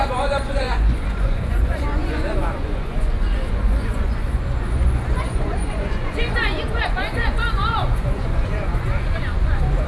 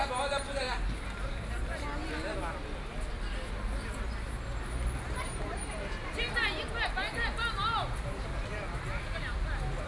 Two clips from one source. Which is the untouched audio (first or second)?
second